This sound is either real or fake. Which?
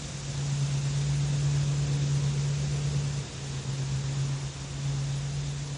real